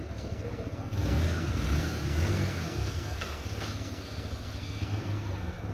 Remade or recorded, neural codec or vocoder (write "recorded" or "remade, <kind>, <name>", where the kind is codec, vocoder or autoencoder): remade, codec, SNAC